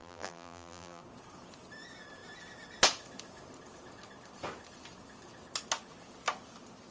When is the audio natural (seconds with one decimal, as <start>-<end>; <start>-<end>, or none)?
1.0-6.9